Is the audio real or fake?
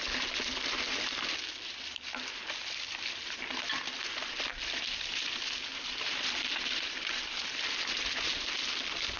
real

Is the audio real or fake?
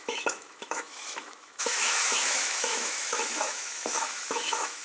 fake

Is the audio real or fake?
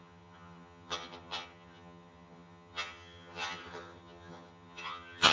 fake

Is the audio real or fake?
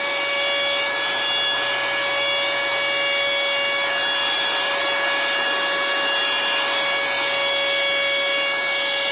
real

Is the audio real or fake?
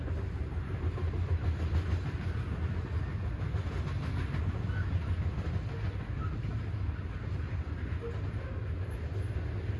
real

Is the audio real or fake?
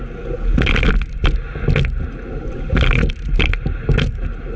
real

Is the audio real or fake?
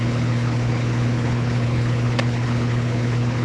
fake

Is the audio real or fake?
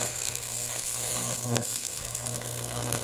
fake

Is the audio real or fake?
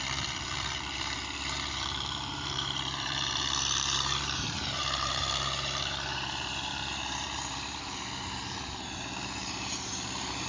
fake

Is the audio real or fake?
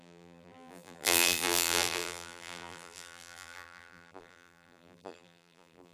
fake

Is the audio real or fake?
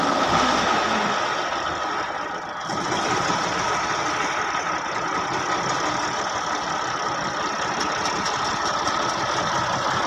real